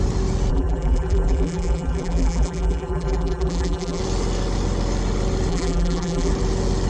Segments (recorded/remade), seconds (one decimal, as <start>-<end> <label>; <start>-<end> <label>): 0.0-0.5 recorded; 0.5-4.0 remade; 4.0-5.5 recorded; 5.5-6.3 remade; 6.3-6.9 recorded